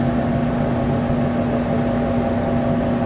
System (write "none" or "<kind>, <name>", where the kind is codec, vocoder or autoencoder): none